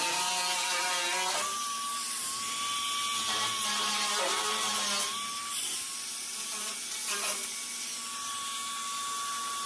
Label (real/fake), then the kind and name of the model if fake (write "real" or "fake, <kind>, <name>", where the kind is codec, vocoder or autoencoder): real